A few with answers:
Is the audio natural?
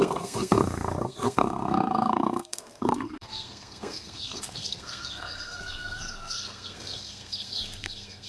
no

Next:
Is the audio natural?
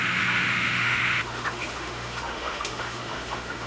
no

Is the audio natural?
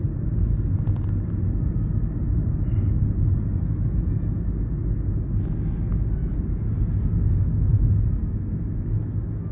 yes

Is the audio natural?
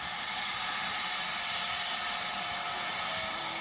yes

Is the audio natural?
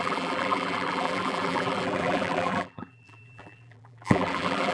no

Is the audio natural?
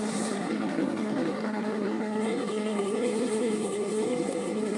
no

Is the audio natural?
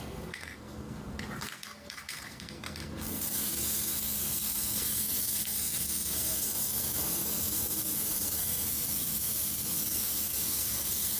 no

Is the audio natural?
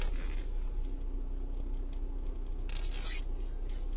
yes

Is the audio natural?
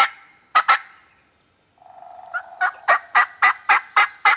yes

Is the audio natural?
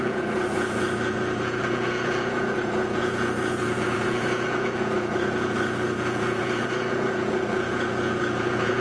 no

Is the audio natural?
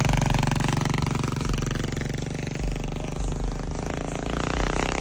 yes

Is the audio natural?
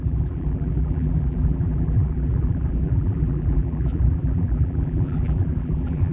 no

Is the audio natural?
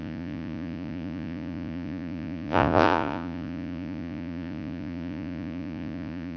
no